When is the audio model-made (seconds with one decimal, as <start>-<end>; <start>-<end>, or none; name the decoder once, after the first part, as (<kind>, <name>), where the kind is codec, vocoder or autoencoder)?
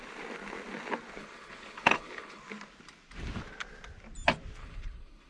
1.2-2.4 (codec, HILCodec); 4.6-5.3